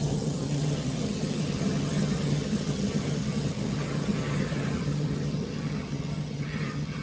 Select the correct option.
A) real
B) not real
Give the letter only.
B